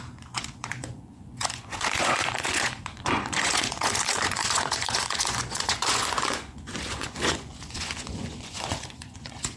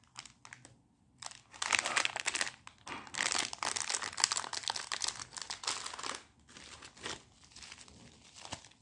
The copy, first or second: first